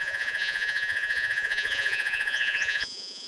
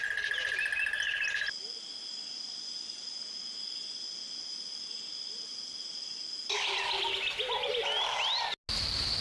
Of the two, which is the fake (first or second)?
first